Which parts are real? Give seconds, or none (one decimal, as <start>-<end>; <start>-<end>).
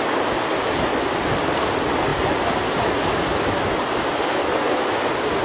0.0-5.4